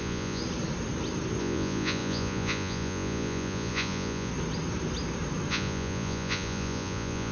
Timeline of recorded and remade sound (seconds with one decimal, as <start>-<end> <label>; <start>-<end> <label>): 0.0-0.4 remade; 0.4-1.4 recorded; 1.4-4.3 remade; 4.3-5.5 recorded; 5.5-7.3 remade